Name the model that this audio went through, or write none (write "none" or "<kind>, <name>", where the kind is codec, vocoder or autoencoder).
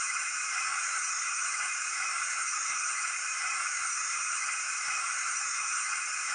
autoencoder, DAC-VAE